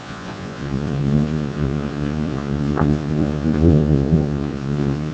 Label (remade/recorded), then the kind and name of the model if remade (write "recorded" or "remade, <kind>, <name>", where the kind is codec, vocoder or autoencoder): remade, vocoder, Vocos